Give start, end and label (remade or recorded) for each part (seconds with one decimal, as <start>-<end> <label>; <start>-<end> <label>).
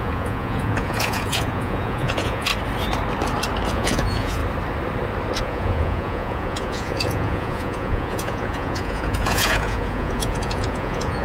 0.0-2.5 remade; 2.5-3.7 recorded; 3.7-4.4 remade; 4.4-5.4 recorded; 5.4-11.2 remade